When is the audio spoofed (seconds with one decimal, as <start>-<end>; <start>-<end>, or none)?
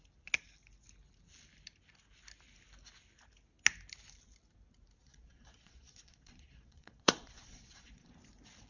5.0-8.1